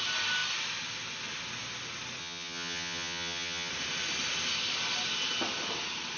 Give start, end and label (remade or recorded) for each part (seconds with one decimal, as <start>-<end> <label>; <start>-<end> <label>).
0.0-2.2 recorded; 2.2-3.7 remade; 3.7-6.2 recorded